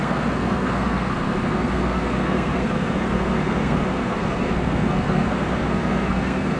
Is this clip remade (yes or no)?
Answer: yes